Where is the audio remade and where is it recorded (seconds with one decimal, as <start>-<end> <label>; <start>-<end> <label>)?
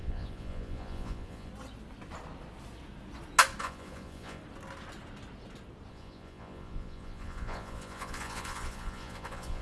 0.0-1.5 remade; 1.5-3.6 recorded; 3.6-4.4 remade; 4.4-5.9 recorded; 5.9-9.6 remade